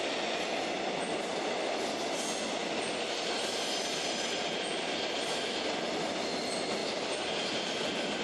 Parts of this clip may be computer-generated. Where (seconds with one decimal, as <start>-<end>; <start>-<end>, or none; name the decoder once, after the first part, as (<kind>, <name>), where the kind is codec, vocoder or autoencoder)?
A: none